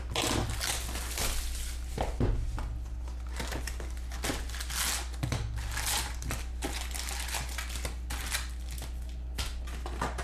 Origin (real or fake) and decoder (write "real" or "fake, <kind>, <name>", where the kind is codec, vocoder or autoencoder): real